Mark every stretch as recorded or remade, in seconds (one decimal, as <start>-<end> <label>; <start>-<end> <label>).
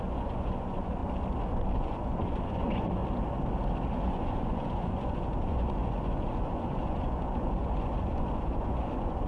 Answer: 0.0-1.0 remade; 1.0-1.8 recorded; 1.8-3.0 remade; 3.0-3.9 recorded; 3.9-9.3 remade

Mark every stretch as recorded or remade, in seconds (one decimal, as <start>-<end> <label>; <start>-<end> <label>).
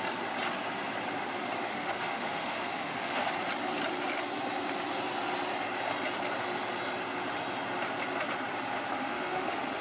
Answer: 0.0-1.7 recorded; 1.7-3.3 remade; 3.3-9.0 recorded; 9.0-9.8 remade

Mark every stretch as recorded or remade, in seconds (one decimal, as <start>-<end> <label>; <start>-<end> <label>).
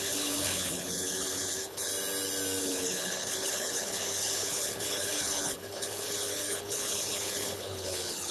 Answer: 0.0-1.9 remade; 1.9-2.6 recorded; 2.6-8.3 remade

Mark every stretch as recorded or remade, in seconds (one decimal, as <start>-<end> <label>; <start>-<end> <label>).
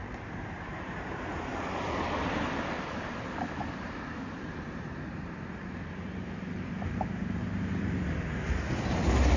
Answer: 0.0-9.4 remade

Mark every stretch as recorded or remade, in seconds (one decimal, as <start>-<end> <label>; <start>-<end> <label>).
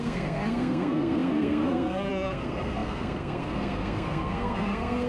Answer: 0.0-5.1 remade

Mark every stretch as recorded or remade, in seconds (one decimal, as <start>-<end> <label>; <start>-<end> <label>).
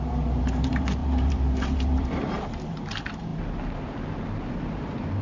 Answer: 0.0-3.3 remade; 3.3-4.5 recorded; 4.5-5.2 remade